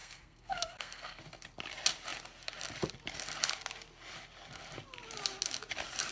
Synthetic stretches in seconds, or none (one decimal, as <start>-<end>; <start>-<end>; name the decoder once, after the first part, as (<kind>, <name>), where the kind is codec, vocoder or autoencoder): 0.0-1.2 (codec, SNAC)